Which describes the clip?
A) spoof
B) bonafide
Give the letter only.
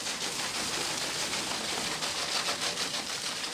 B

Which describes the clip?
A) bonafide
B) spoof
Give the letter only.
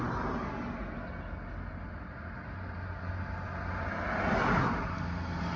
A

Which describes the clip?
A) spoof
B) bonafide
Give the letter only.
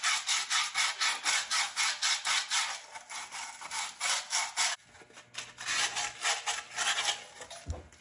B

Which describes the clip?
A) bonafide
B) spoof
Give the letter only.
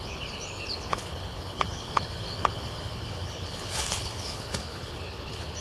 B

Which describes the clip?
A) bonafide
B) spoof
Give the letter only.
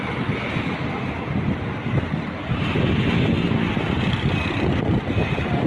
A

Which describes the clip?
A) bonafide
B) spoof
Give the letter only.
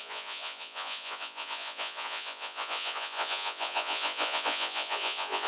B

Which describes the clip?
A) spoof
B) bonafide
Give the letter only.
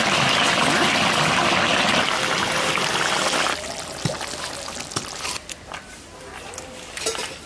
B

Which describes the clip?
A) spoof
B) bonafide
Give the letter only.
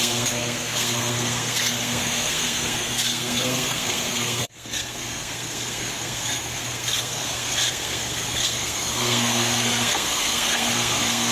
A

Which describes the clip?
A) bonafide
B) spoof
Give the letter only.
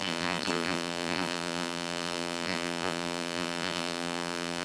B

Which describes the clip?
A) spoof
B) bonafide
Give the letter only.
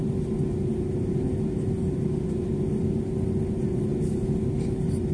B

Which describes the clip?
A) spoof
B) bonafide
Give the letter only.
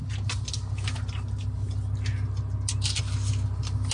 B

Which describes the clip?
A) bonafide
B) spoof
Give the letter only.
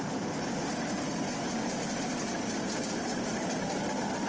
A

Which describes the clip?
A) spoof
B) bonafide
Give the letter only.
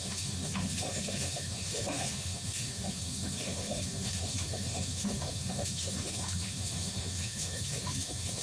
A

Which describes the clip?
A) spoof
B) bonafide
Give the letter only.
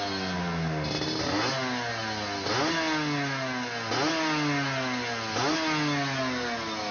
B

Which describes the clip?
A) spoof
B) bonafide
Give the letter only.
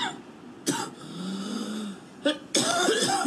B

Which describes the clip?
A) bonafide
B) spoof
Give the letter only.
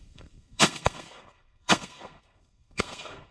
B